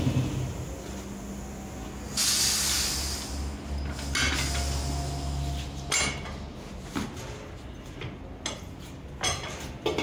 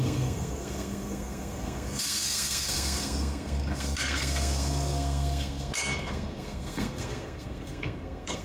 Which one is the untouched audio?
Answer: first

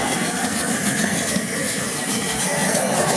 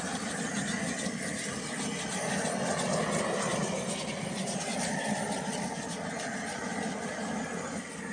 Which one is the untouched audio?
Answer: second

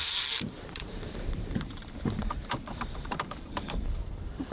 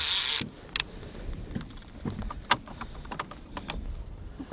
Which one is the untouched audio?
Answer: second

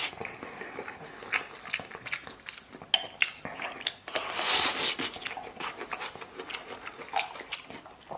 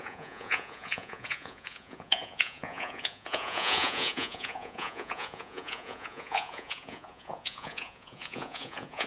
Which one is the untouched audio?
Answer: first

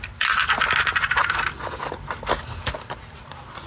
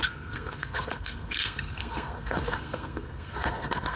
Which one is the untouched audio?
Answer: first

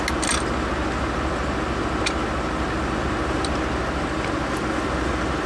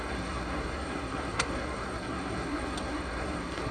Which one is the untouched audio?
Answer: first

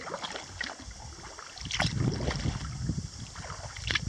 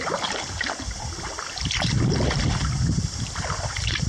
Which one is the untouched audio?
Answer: first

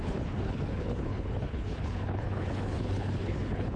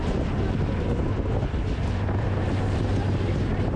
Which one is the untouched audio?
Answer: second